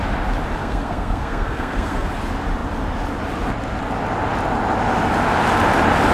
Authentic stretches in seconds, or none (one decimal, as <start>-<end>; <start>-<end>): 0.0-0.6; 2.1-6.1

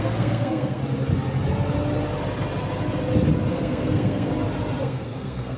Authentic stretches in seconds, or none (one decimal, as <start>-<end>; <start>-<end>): 0.8-3.5; 4.3-4.8

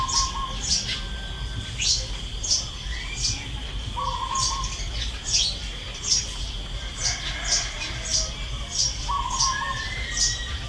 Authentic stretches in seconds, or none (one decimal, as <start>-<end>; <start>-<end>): 0.0-10.7

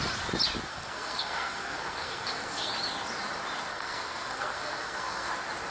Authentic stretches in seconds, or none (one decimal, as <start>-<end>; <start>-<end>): 0.0-0.7; 2.7-3.7; 5.3-5.7

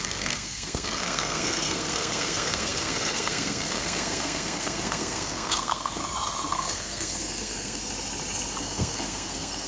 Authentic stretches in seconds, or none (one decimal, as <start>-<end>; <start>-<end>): 6.0-6.5; 7.8-8.6

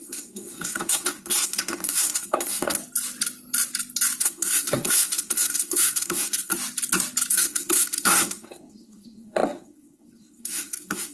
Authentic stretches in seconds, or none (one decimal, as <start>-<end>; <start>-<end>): 2.8-4.2; 6.5-7.3

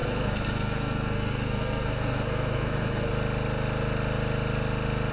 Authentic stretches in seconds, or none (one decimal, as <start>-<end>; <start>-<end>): 3.1-5.1